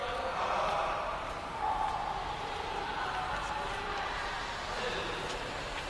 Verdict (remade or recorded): recorded